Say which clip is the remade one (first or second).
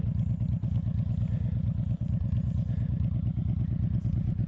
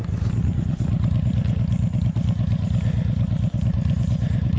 second